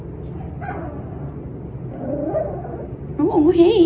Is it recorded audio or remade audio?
recorded